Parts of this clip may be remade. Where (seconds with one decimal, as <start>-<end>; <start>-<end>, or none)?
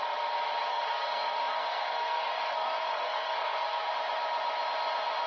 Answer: 0.7-3.9